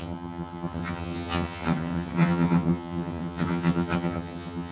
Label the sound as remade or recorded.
remade